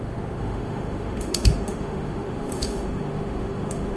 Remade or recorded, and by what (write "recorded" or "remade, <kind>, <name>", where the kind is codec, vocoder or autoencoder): remade, autoencoder, DAC-VAE